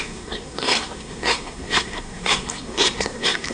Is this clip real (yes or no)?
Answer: no